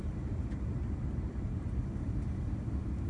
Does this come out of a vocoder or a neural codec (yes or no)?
no